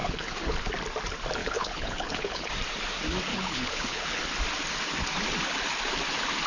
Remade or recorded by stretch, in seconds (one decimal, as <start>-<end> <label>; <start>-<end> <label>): 0.0-0.7 remade; 0.7-1.4 recorded; 1.4-2.5 remade; 2.5-3.3 recorded; 3.3-4.2 remade; 4.2-6.5 recorded